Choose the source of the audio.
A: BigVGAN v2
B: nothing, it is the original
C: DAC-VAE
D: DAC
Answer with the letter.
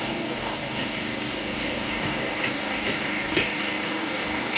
D